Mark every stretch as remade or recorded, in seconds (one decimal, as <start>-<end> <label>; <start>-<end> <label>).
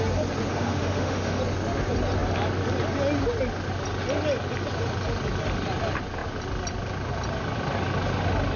0.0-0.5 recorded; 0.5-1.4 remade; 1.4-8.6 recorded